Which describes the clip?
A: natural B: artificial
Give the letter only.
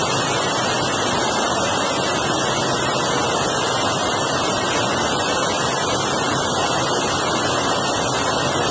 A